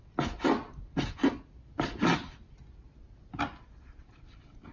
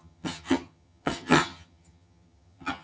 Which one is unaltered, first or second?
first